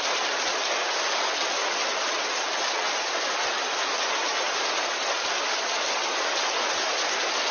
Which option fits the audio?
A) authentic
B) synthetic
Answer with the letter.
A